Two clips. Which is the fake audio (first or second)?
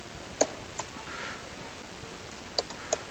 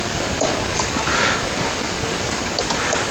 second